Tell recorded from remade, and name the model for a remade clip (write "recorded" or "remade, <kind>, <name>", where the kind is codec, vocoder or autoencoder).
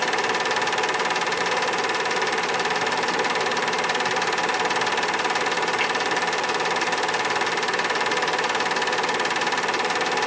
recorded